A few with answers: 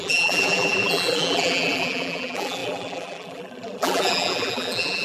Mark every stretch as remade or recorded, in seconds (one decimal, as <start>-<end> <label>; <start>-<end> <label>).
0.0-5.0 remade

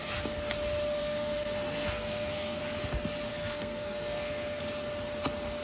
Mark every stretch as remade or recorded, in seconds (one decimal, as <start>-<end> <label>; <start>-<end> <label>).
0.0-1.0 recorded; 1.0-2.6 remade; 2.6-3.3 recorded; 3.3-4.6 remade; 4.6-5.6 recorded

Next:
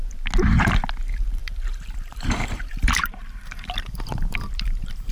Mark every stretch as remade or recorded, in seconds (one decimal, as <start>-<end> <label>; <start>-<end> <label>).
0.0-0.9 recorded; 0.9-5.1 remade

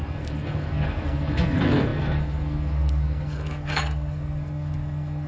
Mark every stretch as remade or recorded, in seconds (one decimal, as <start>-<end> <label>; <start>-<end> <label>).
0.0-5.3 remade

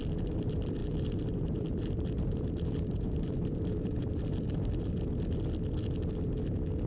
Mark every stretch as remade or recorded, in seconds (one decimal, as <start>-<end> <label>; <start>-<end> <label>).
0.0-0.8 recorded; 0.8-4.9 remade; 4.9-6.9 recorded

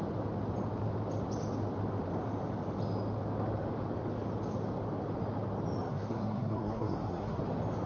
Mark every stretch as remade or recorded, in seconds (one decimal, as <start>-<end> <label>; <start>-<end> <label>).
0.0-5.9 recorded; 5.9-7.4 remade; 7.4-7.9 recorded